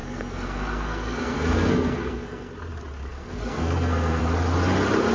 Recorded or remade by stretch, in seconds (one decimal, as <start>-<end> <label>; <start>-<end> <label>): 0.0-2.5 remade; 2.5-3.1 recorded; 3.1-4.2 remade; 4.2-5.1 recorded